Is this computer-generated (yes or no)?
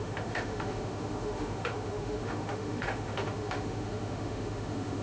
yes